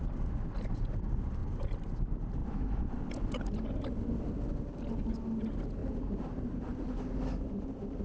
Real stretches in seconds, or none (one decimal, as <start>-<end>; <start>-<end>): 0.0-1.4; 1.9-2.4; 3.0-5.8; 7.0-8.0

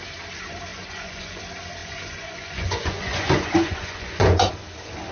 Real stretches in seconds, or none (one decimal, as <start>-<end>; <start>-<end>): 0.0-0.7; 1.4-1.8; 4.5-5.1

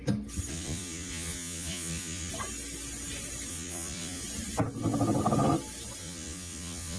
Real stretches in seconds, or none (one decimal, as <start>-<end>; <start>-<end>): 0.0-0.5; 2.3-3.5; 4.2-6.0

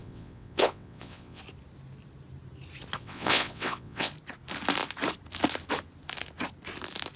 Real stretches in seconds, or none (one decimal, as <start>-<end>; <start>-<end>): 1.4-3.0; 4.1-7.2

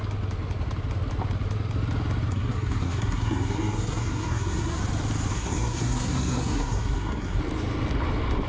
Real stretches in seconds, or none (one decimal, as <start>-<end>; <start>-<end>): 0.0-2.3; 4.8-5.3; 7.4-8.5

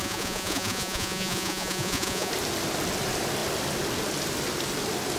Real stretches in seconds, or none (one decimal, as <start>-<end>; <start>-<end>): 2.3-5.2

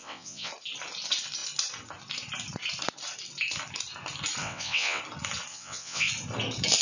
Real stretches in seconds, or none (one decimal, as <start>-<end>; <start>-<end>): 0.5-4.4; 5.0-5.5; 6.1-6.8

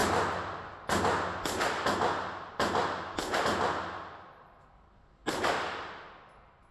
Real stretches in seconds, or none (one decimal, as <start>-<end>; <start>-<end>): 0.0-6.7